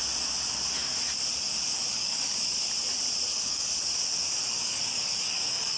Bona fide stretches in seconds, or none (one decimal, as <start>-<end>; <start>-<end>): 0.0-1.9; 2.3-3.3; 3.7-4.4